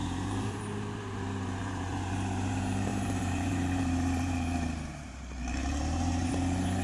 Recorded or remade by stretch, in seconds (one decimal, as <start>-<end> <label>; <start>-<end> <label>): 0.0-6.8 remade